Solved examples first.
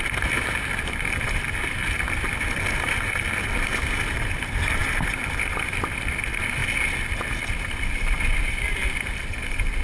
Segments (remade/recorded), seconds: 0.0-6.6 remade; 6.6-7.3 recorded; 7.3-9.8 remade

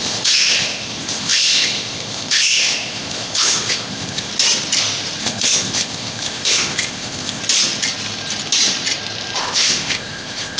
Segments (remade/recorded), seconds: 0.0-4.3 remade; 4.3-5.2 recorded; 5.2-7.4 remade; 7.4-9.4 recorded; 9.4-10.6 remade

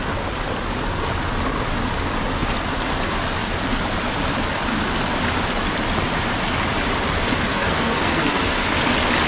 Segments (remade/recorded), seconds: 0.0-7.5 recorded; 7.5-8.7 remade; 8.7-9.3 recorded

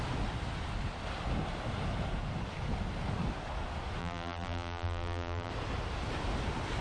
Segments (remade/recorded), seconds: 0.0-4.0 recorded; 4.0-5.5 remade; 5.5-6.8 recorded

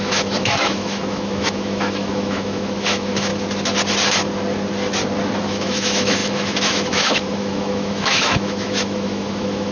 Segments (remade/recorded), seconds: 0.0-3.3 remade; 3.3-5.4 recorded; 5.4-9.7 remade

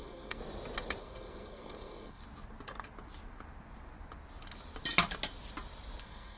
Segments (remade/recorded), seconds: 0.0-0.4 remade; 0.4-1.0 recorded; 1.0-2.2 remade; 2.2-6.0 recorded; 6.0-6.4 remade